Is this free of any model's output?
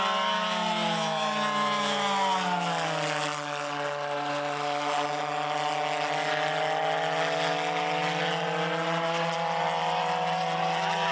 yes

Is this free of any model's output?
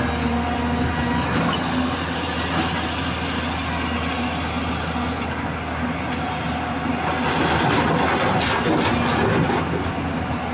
yes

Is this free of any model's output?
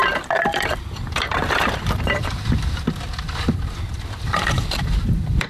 no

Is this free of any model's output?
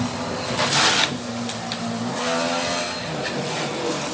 yes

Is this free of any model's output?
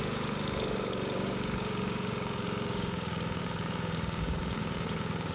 no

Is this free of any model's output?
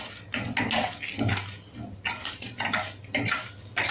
yes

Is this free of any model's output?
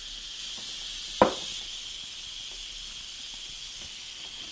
yes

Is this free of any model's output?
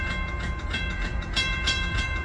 no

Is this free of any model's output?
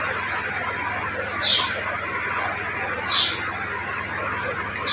yes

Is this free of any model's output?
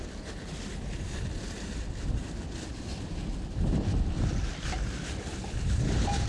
no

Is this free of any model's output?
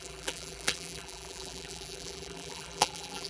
no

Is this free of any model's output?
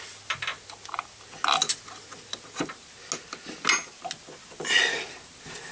yes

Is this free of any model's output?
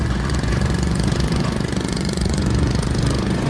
no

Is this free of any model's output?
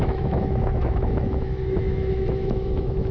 no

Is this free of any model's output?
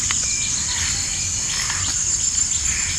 yes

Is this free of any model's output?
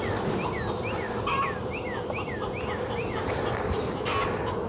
yes